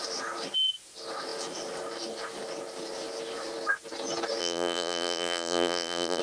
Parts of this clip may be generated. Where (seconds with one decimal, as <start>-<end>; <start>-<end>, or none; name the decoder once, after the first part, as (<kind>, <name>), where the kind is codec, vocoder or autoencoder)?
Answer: 4.4-6.2 (vocoder, BigVGAN v2)